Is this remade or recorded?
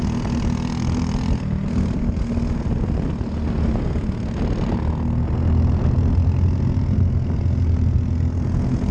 recorded